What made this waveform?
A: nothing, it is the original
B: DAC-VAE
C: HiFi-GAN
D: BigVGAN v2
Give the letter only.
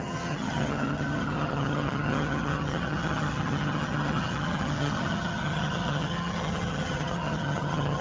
C